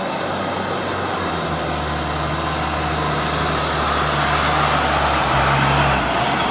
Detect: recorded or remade recorded